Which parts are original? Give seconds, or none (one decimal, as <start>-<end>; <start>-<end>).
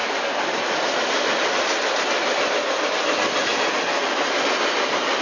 0.0-5.2